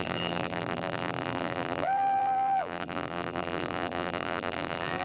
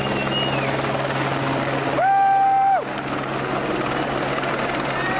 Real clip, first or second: second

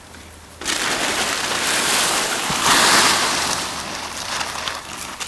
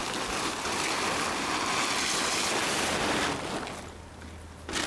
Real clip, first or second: second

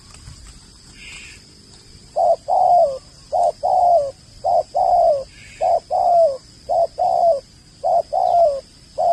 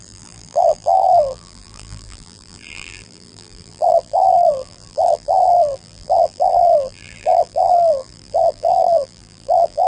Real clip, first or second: first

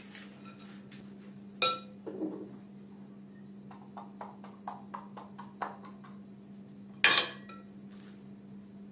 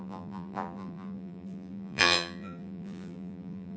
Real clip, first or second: first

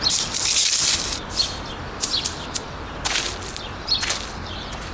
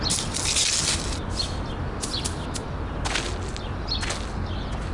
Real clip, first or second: second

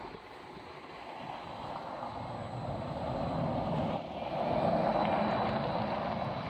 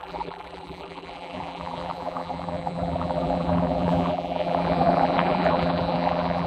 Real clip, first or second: first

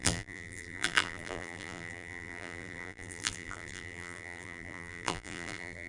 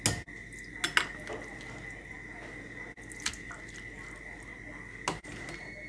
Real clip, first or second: second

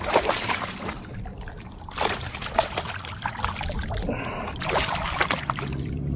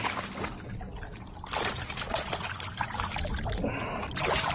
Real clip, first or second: second